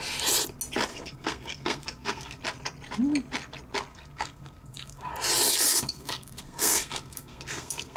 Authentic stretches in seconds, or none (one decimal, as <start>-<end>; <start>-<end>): 0.0-0.9; 2.4-3.9; 5.1-5.7